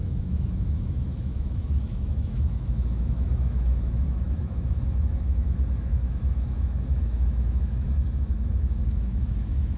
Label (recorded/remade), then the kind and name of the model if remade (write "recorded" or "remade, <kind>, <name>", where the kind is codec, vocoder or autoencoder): remade, autoencoder, DAC-VAE